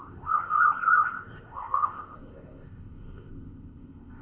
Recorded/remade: remade